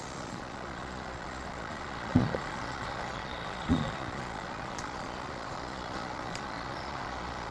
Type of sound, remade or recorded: remade